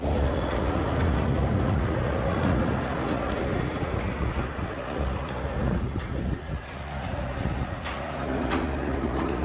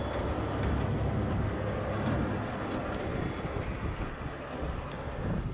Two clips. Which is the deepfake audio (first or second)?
first